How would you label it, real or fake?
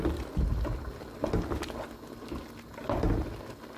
real